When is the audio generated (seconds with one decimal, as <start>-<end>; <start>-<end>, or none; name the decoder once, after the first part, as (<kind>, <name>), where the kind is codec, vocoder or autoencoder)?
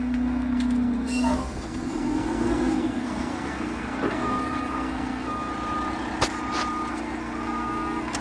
0.0-5.5 (codec, SNAC); 6.9-8.2